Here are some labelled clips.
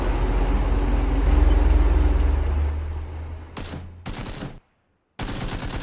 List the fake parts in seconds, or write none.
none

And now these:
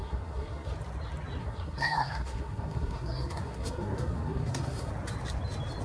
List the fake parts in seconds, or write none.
0.0-0.7 (codec, SNAC); 1.4-4.9

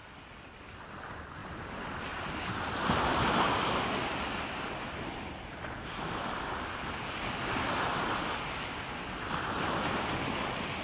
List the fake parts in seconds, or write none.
none

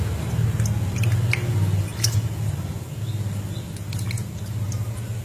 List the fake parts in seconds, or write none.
none